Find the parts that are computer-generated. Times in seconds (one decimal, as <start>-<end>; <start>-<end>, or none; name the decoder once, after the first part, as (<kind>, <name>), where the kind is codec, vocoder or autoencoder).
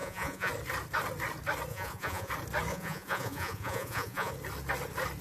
0.0-0.5 (vocoder, Vocos); 1.7-2.3; 2.7-4.3